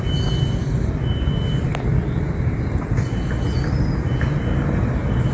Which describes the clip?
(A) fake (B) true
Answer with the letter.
B